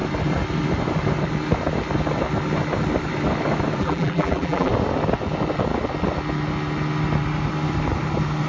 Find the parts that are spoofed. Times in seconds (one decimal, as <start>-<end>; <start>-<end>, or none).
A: 3.8-4.7